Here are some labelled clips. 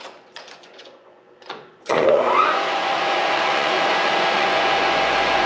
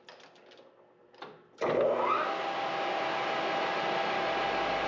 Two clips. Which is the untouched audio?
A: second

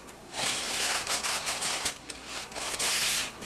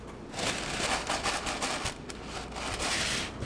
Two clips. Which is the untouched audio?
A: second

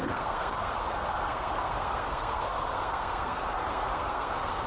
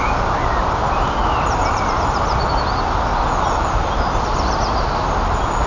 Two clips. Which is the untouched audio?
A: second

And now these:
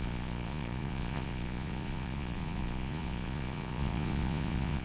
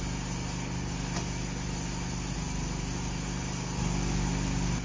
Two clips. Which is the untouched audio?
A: second